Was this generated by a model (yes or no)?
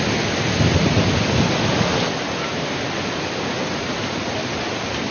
no